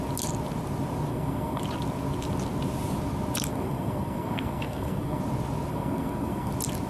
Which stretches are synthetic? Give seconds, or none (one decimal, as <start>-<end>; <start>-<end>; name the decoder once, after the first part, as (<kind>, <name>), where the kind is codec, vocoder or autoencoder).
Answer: 1.1-1.6 (codec, SNAC); 3.5-5.2; 5.7-6.5